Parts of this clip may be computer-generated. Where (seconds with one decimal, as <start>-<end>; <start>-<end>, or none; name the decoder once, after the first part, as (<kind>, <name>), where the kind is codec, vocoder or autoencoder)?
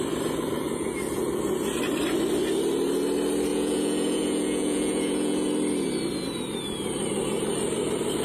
3.5-5.5 (vocoder, Vocos)